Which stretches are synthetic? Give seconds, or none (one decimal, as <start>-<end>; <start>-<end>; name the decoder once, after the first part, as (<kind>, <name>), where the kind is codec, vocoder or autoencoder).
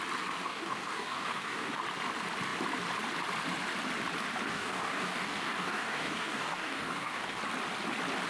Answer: 0.4-1.8 (codec, DAC); 4.5-7.4